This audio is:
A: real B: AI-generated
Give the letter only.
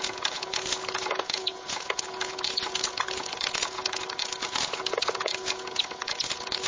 B